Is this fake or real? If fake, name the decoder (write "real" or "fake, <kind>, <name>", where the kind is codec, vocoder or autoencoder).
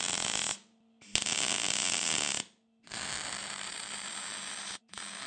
real